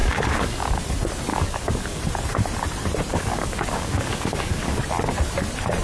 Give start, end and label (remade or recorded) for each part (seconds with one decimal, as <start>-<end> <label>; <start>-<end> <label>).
0.0-0.8 remade; 0.8-1.3 recorded; 1.3-2.0 remade; 2.0-3.1 recorded; 3.1-4.8 remade; 4.8-5.8 recorded